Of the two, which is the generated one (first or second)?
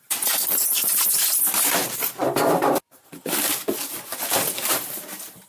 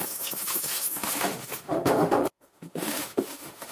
second